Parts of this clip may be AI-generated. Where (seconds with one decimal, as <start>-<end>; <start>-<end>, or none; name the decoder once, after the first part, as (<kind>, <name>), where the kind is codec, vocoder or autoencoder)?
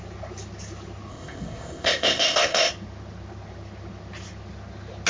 1.1-2.7 (codec, ZipCodec)